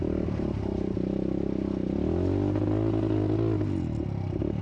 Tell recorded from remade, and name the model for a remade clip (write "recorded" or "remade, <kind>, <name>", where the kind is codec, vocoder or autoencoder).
recorded